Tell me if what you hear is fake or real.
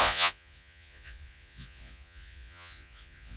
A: fake